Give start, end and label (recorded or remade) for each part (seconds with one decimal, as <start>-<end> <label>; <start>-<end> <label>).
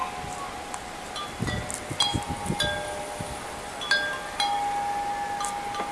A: 0.0-5.9 recorded